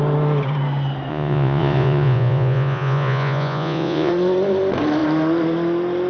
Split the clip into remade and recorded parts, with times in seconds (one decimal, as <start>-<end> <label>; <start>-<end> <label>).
0.0-1.1 recorded; 1.1-4.1 remade; 4.1-6.1 recorded